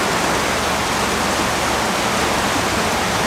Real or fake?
real